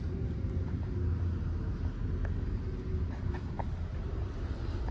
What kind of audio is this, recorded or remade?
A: recorded